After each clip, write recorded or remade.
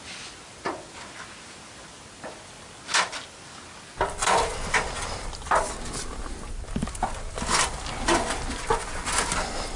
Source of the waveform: recorded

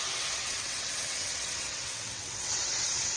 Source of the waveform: remade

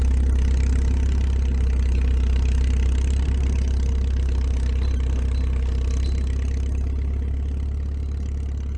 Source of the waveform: recorded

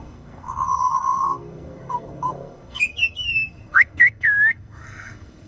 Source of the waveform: remade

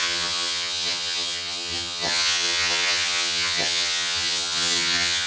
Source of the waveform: remade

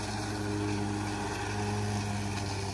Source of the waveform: recorded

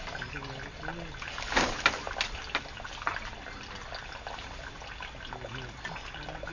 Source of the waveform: recorded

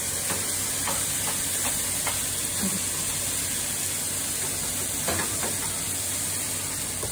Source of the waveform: recorded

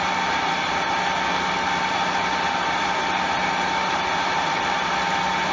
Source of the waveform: recorded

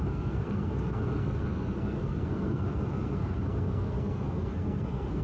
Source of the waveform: remade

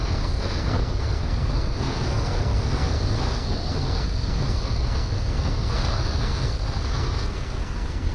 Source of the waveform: remade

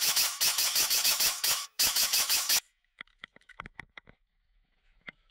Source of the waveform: remade